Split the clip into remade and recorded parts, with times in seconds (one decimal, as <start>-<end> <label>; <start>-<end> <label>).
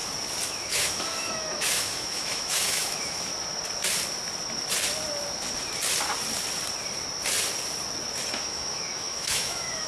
0.0-0.5 recorded; 0.5-3.3 remade; 3.3-8.3 recorded; 8.3-9.9 remade